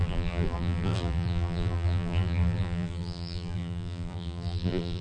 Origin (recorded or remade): remade